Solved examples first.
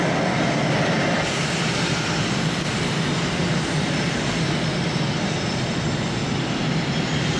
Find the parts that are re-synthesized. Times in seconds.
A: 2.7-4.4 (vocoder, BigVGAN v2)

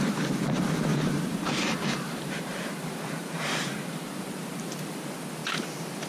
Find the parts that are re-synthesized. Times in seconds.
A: 0.9-4.6 (vocoder, BigVGAN v2)

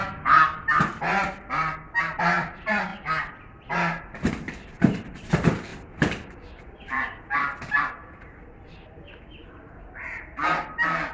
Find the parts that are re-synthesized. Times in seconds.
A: 2.2-2.9 (vocoder, BigVGAN v2); 4.3-11.1

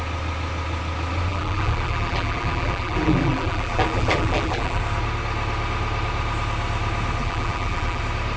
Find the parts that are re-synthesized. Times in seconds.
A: 1.3-4.8 (vocoder, BigVGAN v2); 7.2-8.0

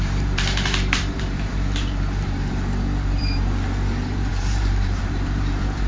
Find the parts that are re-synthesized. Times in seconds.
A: 0.0-5.9 (vocoder, BigVGAN v2)

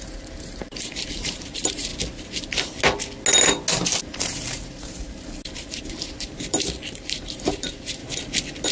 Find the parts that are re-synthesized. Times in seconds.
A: 0.0-1.9 (vocoder, BigVGAN v2); 4.0-8.0

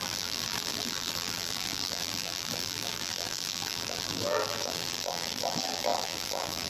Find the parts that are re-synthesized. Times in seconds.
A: 0.0-6.7 (vocoder, BigVGAN v2)

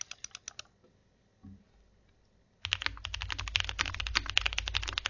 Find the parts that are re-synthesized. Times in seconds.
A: none